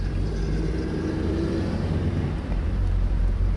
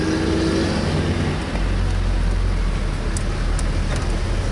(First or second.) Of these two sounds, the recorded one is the second